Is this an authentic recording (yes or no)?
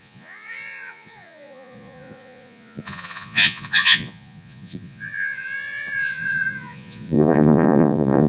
no